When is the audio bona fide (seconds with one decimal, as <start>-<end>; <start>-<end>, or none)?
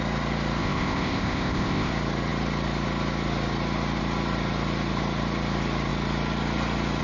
0.0-0.6; 1.9-7.0